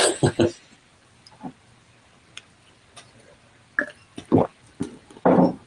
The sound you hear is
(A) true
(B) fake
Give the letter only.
A